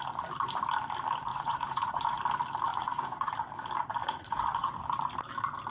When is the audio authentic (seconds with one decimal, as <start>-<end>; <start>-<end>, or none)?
0.0-1.3; 2.2-2.7; 3.3-4.0; 4.8-5.7